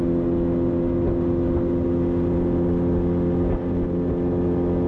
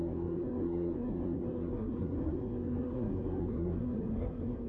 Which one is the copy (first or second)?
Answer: second